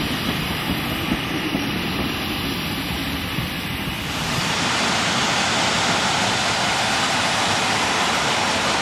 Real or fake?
fake